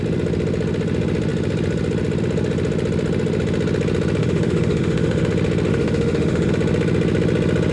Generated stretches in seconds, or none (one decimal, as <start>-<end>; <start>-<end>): 4.2-5.3; 5.7-6.5